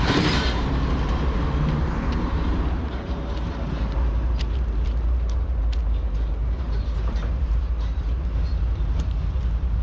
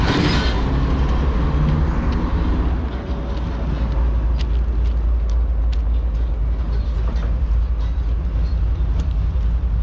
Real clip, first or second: second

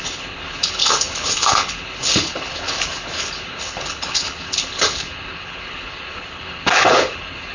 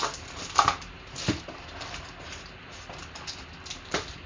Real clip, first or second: second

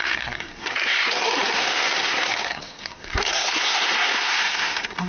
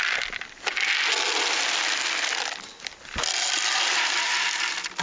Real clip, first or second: second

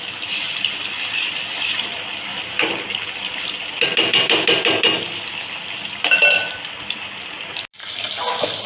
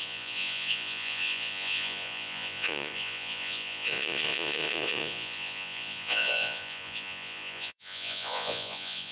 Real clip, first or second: first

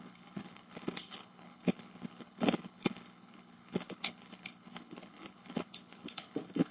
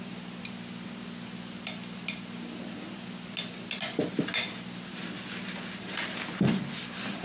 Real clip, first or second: second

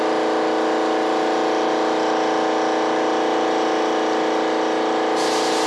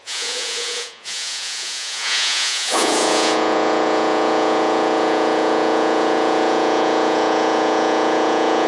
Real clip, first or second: first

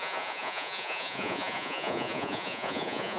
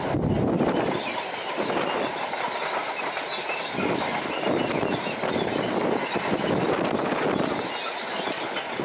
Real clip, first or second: second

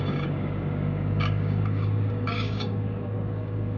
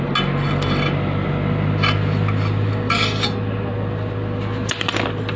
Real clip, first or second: second